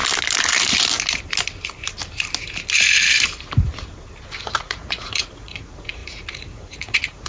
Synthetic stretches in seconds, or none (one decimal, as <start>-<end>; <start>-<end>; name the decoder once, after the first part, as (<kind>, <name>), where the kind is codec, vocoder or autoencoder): 4.4-7.3 (vocoder, Vocos)